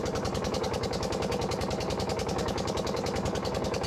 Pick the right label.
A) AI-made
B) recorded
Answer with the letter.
A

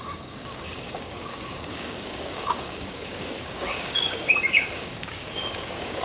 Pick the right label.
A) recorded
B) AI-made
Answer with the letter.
B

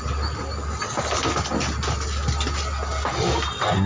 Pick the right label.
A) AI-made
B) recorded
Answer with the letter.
B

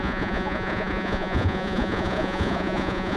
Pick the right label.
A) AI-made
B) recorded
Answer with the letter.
A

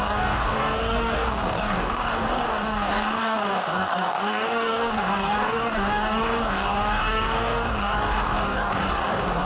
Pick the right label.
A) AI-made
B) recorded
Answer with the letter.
A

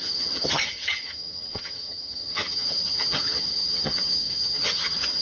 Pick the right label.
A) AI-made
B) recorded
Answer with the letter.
A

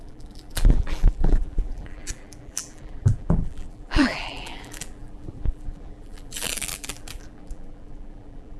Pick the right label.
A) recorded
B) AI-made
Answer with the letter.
B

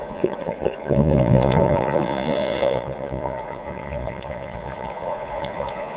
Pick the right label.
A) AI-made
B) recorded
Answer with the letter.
A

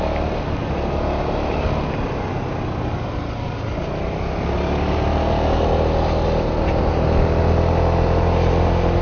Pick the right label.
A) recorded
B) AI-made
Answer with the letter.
A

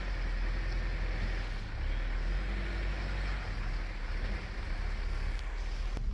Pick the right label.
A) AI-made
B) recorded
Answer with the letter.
B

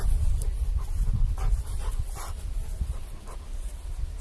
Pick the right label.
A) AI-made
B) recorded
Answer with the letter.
B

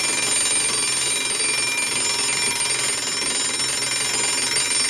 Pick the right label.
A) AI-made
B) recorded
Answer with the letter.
B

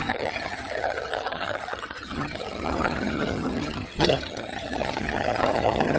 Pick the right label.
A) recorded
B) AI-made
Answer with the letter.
B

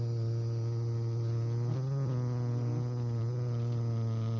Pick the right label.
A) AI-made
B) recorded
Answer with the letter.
B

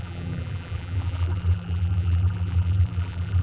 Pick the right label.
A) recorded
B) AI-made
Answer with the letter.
B